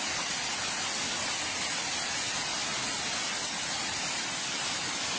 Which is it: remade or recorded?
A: recorded